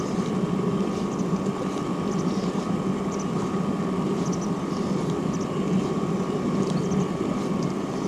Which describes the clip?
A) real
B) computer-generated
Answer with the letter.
A